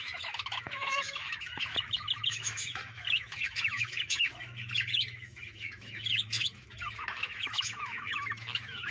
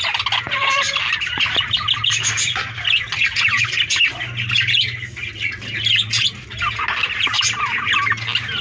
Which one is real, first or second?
second